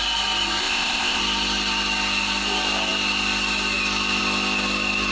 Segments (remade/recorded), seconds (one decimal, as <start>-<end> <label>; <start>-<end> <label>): 0.0-0.6 recorded; 0.6-1.2 remade; 1.2-5.1 recorded